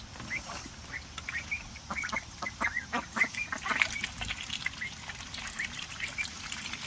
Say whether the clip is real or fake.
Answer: real